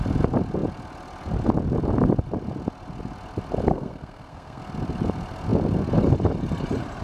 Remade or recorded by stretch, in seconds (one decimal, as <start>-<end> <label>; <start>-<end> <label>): 0.0-3.7 recorded; 3.7-4.6 remade; 4.6-7.0 recorded